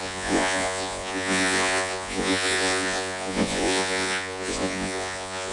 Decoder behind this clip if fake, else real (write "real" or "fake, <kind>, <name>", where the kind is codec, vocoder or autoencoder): fake, vocoder, Vocos